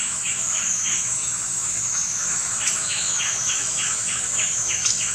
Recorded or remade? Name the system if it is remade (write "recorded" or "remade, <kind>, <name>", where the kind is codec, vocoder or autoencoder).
remade, autoencoder, DAC-VAE